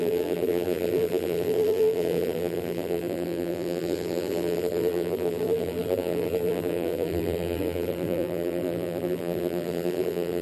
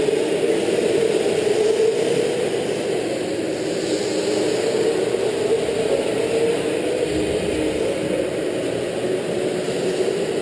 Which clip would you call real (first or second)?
second